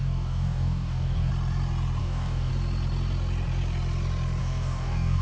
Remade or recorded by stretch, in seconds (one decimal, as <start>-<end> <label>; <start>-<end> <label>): 0.0-1.3 remade; 1.3-2.0 recorded; 2.0-2.5 remade; 2.5-4.4 recorded; 4.4-5.2 remade